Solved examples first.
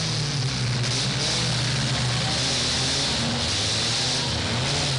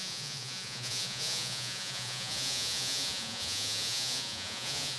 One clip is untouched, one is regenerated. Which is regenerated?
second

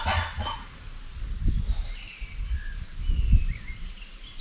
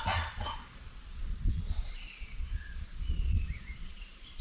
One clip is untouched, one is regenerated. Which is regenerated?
second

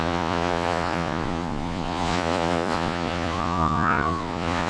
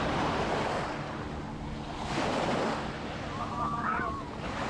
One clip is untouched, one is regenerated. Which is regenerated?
first